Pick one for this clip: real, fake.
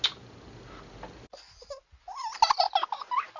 real